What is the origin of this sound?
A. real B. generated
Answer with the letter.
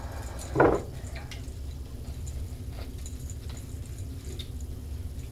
A